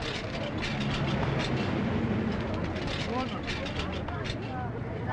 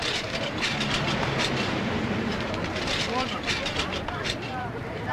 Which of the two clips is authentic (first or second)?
first